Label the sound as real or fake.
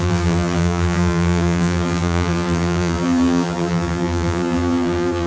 fake